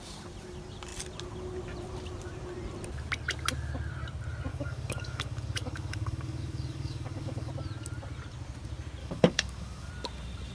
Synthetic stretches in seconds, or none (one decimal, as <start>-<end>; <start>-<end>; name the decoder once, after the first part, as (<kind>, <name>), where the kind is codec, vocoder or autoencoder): 4.5-7.5 (codec, DAC); 9.0-9.9